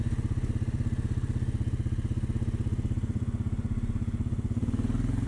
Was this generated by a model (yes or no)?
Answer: no